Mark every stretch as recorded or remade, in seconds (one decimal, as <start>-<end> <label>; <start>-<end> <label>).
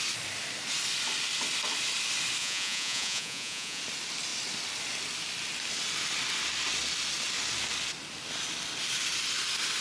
0.0-2.4 recorded; 2.4-3.8 remade; 3.8-9.8 recorded